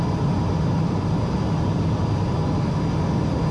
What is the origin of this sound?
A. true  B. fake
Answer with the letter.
A